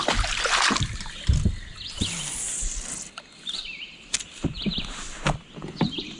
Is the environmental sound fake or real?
real